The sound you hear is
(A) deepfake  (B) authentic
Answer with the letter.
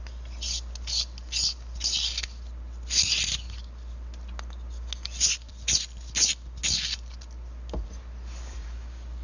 B